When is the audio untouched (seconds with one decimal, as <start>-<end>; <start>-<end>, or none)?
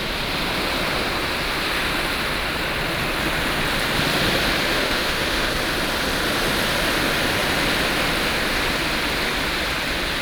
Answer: 0.0-4.7; 5.5-10.2